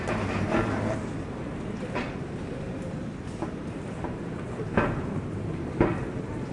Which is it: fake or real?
fake